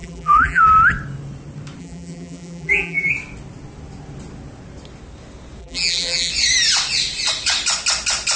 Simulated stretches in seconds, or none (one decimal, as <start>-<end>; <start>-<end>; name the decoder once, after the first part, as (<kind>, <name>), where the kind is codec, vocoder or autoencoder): 0.0-0.6 (vocoder, BigVGAN v2); 1.8-3.1; 5.6-6.3